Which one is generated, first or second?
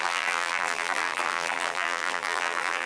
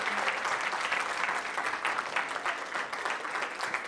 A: first